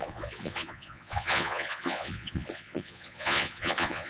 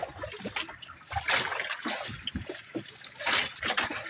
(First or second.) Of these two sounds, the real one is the second